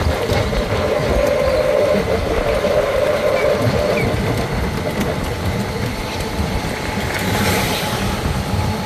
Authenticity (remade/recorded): recorded